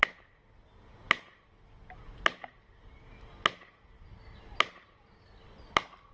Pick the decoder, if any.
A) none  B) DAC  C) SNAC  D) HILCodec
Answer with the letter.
A